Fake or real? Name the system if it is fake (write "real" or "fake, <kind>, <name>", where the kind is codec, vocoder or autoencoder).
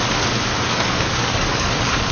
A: fake, codec, DAC